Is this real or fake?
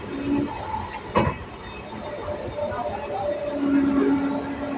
real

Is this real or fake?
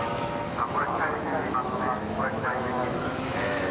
fake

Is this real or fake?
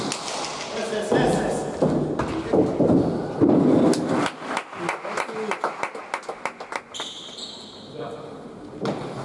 real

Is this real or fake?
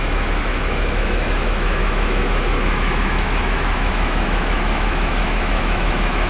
fake